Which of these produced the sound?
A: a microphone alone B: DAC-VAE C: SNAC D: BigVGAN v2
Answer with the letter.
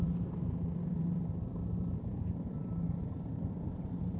A